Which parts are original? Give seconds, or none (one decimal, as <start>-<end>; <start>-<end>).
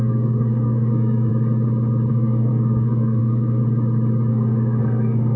1.3-2.1; 3.6-4.3